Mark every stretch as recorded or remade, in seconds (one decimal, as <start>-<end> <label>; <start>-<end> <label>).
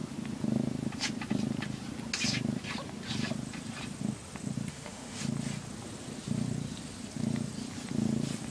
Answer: 0.0-4.7 recorded; 4.7-5.2 remade; 5.2-8.5 recorded